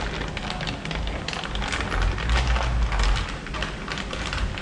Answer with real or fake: real